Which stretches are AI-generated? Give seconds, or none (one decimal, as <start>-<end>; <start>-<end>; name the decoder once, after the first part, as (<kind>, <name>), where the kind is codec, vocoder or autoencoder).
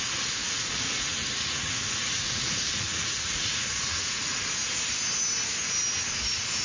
0.4-4.4 (vocoder, Vocos)